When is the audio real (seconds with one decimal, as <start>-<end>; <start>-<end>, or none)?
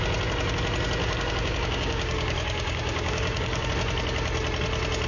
0.0-1.0; 3.7-5.1